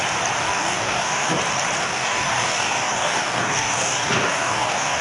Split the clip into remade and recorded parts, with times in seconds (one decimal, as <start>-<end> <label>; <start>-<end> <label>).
0.0-0.4 recorded; 0.4-1.4 remade; 1.4-1.8 recorded; 1.8-5.0 remade